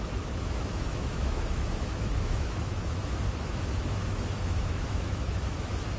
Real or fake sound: fake